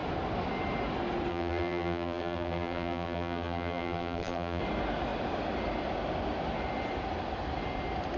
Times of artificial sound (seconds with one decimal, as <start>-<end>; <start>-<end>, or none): 1.3-4.6